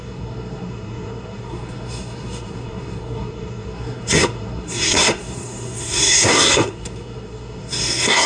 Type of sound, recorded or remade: remade